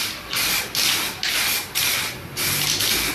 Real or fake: real